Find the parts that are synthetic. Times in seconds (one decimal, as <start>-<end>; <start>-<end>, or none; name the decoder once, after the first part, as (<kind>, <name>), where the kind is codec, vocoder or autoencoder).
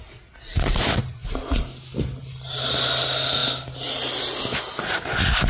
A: none